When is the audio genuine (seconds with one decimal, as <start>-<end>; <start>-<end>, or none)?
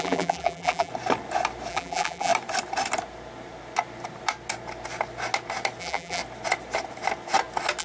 0.9-1.7; 2.3-5.8; 6.2-7.8